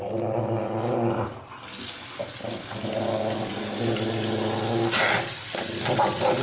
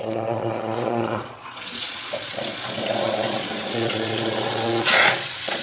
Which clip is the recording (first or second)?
first